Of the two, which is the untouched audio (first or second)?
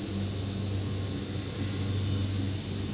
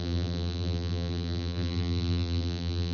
first